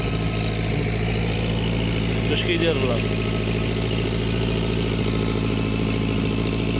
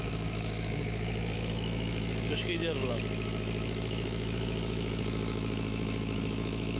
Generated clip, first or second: second